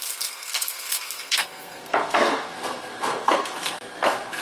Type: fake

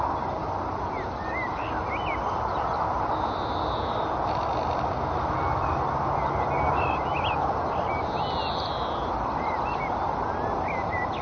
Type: real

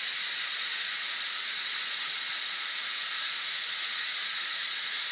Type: fake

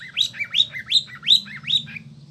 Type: real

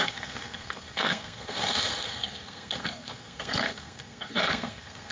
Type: fake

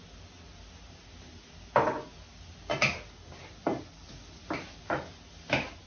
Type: real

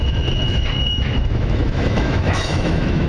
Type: fake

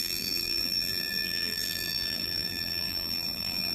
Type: fake